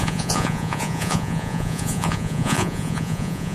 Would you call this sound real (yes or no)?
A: no